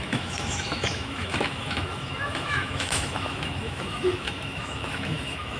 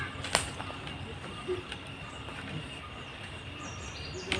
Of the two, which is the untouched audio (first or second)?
second